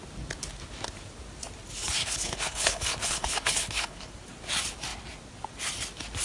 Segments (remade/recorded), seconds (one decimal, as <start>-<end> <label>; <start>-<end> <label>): 0.0-2.0 recorded; 2.0-4.1 remade; 4.1-6.2 recorded